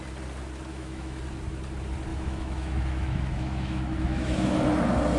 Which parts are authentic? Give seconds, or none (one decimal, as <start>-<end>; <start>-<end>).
0.0-0.7; 1.2-2.1; 4.5-5.2